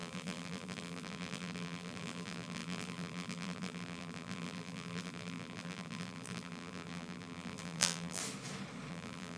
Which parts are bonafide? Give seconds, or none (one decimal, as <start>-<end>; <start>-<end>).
8.2-8.9